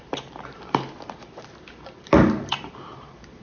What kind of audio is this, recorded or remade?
remade